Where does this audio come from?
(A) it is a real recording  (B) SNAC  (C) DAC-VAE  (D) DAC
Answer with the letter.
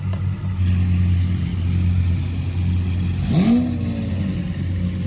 A